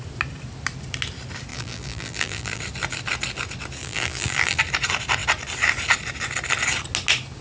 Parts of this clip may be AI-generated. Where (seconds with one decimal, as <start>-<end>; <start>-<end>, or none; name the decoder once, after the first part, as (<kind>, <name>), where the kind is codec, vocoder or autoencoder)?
1.5-2.6 (vocoder, BigVGAN v2); 3.8-4.6